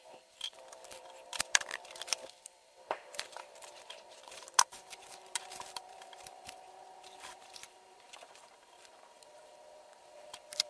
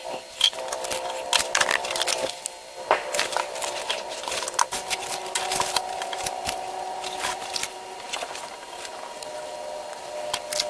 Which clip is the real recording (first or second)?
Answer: second